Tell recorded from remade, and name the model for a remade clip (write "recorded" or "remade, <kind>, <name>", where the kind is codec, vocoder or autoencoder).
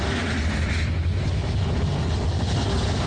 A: recorded